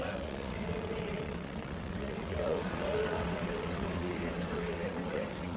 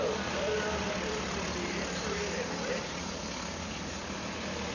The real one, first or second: second